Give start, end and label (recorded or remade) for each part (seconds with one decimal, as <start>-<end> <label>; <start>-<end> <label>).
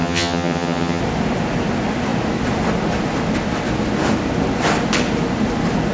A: 0.0-1.0 remade; 1.0-5.9 recorded